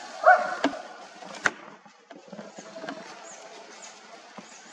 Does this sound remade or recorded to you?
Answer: recorded